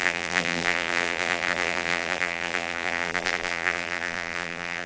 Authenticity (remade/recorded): remade